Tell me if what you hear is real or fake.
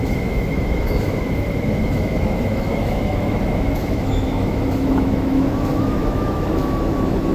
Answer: fake